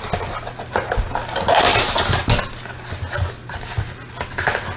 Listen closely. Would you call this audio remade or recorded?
recorded